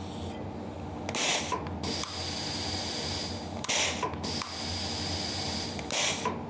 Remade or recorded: recorded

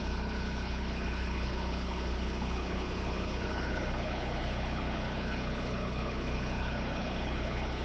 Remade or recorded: remade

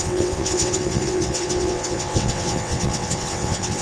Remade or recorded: remade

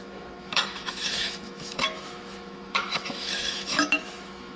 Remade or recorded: remade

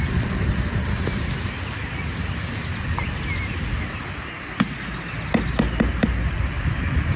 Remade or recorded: recorded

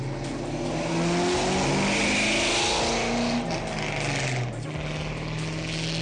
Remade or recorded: recorded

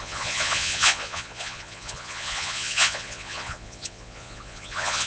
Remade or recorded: remade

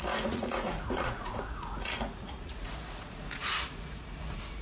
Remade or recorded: remade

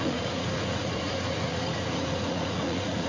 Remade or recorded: remade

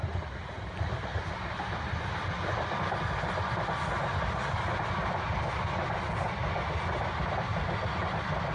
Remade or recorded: recorded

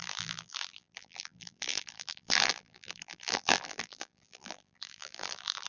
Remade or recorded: remade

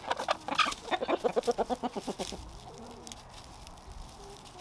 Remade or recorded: recorded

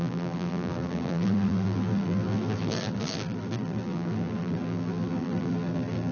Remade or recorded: remade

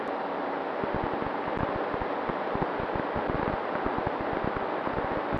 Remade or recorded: recorded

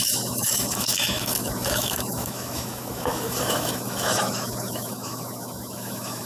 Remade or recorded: remade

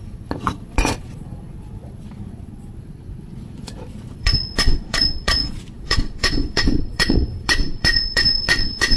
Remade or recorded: remade